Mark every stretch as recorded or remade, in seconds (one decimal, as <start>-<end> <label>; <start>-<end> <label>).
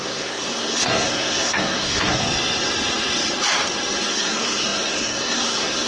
0.0-2.2 remade; 2.2-4.1 recorded; 4.1-5.9 remade